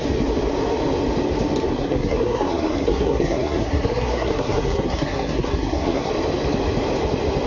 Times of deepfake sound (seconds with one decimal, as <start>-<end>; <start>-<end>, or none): 1.7-6.1

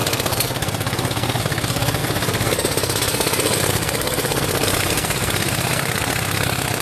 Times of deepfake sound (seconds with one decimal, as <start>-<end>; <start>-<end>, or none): 0.0-6.8

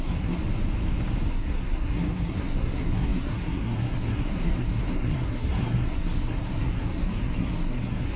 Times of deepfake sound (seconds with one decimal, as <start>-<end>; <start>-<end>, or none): 0.0-0.4; 1.3-8.2

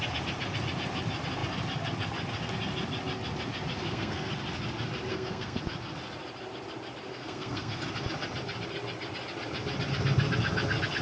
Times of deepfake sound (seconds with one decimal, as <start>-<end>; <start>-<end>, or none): 3.8-4.3; 5.1-5.6; 7.1-7.8